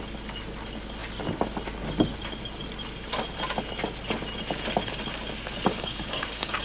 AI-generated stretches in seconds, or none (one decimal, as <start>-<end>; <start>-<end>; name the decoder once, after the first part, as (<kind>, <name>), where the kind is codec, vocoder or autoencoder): 5.7-6.6 (codec, DAC)